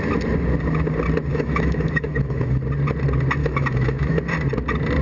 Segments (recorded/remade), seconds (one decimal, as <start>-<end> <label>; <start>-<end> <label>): 0.0-1.3 recorded; 1.3-2.6 remade; 2.6-3.4 recorded; 3.4-4.1 remade; 4.1-5.0 recorded